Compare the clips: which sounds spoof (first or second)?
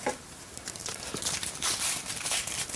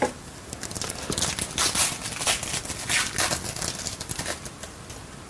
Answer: first